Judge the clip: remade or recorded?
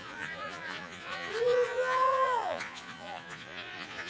remade